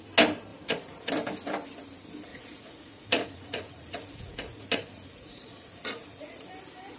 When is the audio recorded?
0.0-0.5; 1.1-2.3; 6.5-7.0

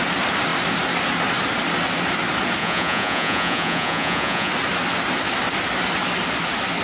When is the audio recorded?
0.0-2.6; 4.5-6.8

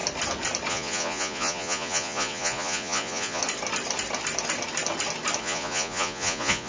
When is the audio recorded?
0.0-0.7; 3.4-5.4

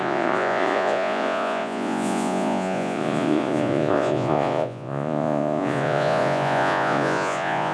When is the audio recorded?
none